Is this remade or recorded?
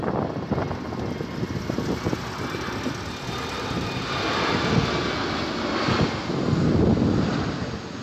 recorded